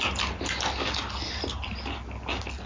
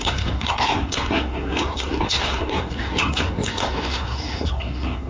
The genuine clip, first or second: first